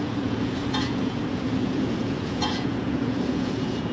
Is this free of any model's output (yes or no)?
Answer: no